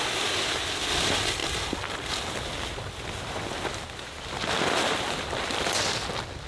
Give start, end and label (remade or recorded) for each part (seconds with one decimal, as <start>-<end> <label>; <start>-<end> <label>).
0.0-6.5 recorded